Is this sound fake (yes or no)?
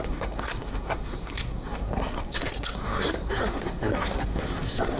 yes